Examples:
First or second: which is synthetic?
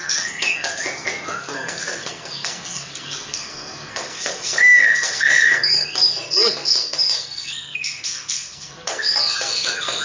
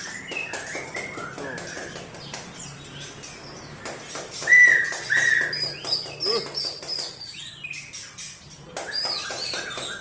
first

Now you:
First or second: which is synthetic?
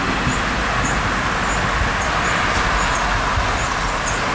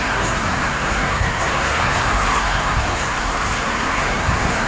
second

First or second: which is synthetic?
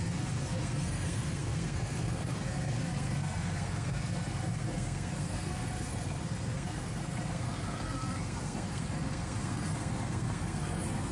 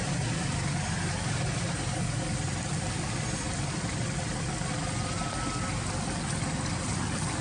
first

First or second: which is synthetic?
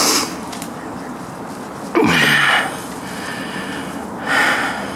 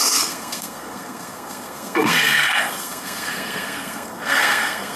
second